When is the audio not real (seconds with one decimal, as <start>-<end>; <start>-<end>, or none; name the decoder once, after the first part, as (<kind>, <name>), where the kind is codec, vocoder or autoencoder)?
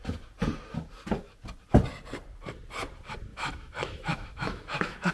3.3-5.1 (autoencoder, DAC-VAE)